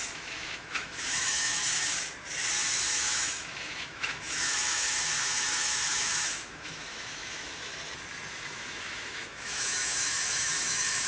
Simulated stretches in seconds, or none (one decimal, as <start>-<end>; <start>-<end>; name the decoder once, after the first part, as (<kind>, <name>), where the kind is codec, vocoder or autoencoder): 0.0-1.9 (autoencoder, DAC-VAE); 2.7-7.7; 8.3-11.1